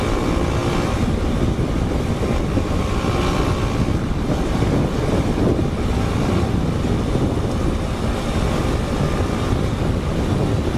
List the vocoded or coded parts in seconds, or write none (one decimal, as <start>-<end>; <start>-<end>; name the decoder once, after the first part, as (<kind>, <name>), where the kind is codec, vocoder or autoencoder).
none